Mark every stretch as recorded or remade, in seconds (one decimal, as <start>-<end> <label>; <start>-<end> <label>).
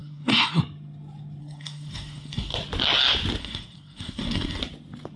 0.0-0.6 remade; 0.6-1.4 recorded; 1.4-2.5 remade; 2.5-3.4 recorded; 3.4-4.6 remade; 4.6-5.2 recorded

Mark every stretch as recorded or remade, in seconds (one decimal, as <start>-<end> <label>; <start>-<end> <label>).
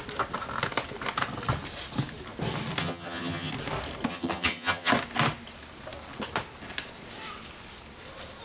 0.0-2.8 recorded; 2.8-3.5 remade; 3.5-4.1 recorded; 4.1-4.9 remade; 4.9-8.4 recorded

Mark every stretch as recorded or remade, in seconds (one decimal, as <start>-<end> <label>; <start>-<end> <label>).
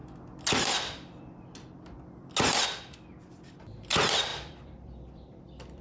0.0-4.3 recorded; 4.3-5.8 remade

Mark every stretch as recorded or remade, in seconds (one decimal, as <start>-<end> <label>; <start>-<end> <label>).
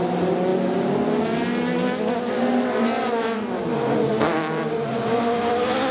0.0-5.9 recorded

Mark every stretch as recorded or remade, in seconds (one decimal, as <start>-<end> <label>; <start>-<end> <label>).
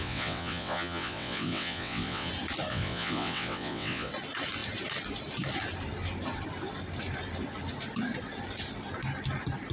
0.0-2.3 remade; 2.3-2.7 recorded; 2.7-4.1 remade; 4.1-9.7 recorded